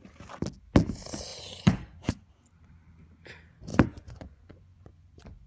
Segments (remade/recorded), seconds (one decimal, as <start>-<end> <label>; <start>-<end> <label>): 0.0-1.3 recorded; 1.3-2.3 remade; 2.3-3.7 recorded; 3.7-5.5 remade